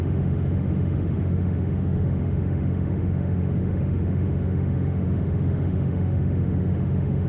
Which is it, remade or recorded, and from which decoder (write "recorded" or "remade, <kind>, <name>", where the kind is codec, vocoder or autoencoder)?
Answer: remade, autoencoder, DAC-VAE